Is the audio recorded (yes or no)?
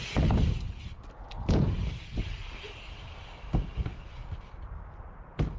yes